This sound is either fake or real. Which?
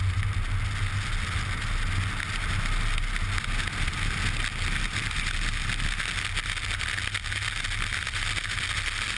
real